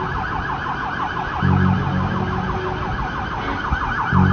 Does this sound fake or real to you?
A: real